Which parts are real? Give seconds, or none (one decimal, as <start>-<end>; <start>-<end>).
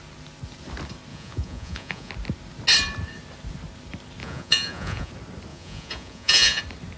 0.0-1.1; 2.1-4.2; 5.1-5.5; 6.6-7.0